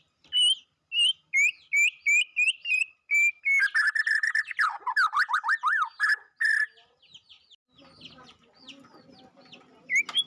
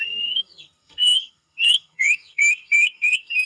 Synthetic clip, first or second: second